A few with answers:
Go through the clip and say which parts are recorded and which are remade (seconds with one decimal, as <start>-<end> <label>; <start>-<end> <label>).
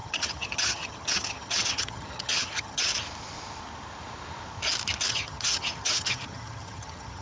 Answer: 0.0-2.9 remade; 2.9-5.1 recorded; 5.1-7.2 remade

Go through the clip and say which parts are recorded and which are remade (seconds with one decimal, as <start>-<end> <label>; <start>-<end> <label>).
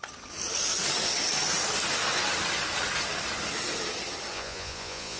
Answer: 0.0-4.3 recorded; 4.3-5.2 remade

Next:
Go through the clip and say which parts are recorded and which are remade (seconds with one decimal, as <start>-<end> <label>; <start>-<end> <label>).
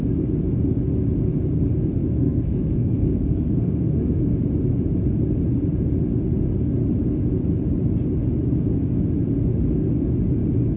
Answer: 0.0-2.0 recorded; 2.0-4.2 remade; 4.2-10.8 recorded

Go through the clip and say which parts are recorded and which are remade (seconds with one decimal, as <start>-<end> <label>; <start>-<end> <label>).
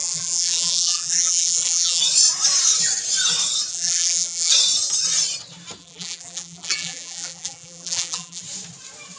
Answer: 0.0-2.0 remade; 2.0-3.7 recorded; 3.7-4.5 remade; 4.5-5.8 recorded; 5.8-8.4 remade; 8.4-9.2 recorded